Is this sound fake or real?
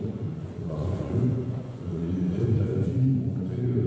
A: fake